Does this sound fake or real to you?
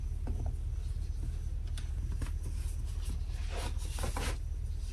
real